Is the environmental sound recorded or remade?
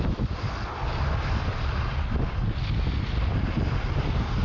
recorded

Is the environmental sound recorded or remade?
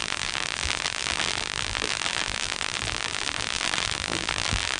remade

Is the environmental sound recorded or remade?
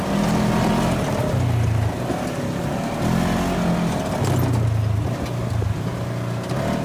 recorded